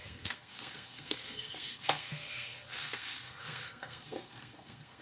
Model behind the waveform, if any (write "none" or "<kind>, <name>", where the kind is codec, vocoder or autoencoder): codec, SNAC